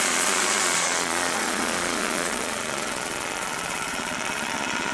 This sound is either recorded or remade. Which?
remade